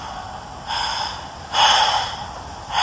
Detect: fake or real fake